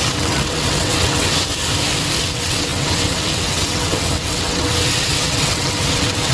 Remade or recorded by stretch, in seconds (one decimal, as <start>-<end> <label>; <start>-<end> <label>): 0.0-1.5 remade; 1.5-2.2 recorded; 2.2-6.3 remade

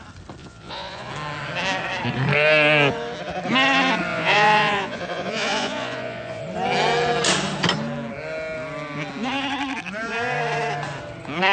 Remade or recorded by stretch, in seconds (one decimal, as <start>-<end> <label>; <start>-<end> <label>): 0.0-0.4 recorded; 0.4-1.1 remade; 1.1-4.1 recorded; 4.1-6.4 remade; 6.4-11.5 recorded

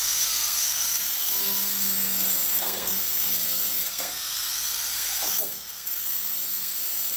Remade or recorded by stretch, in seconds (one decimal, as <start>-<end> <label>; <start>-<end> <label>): 0.0-7.2 remade